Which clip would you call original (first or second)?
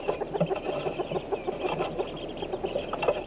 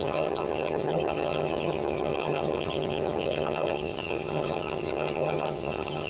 first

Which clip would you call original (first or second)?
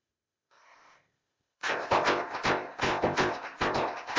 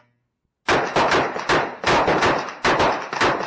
second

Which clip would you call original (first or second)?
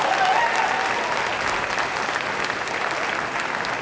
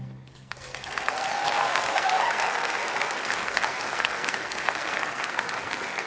first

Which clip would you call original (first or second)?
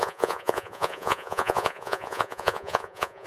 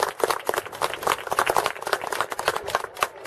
second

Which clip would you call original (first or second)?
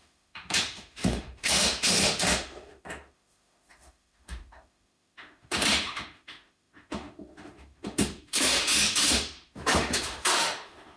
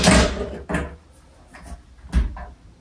second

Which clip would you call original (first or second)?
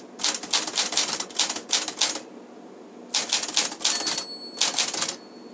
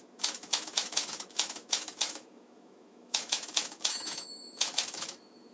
first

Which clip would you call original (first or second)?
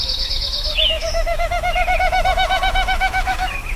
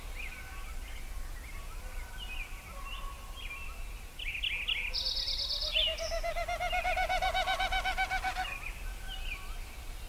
second